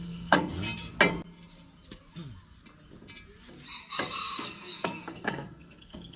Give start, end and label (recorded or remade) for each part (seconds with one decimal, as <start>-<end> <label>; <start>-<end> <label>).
0.0-0.5 remade; 0.5-4.2 recorded; 4.2-6.2 remade